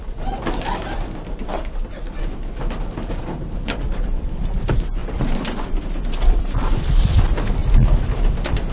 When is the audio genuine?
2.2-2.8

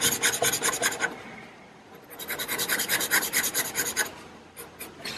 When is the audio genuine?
0.0-1.2; 4.3-5.2

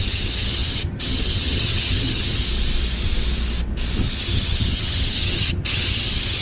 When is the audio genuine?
2.4-4.0

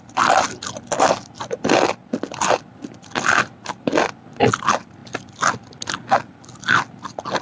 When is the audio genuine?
0.0-7.4

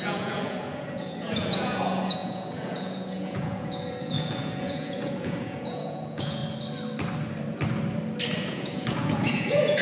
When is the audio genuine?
6.4-8.4

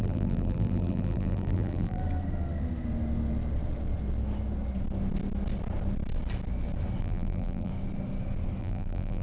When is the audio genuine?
2.0-7.0; 7.7-8.6

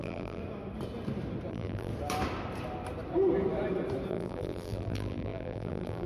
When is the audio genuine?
0.4-1.5; 1.9-4.1

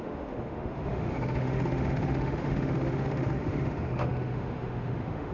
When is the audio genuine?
none